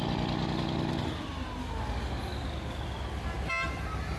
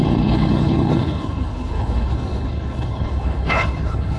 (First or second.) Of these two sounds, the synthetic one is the second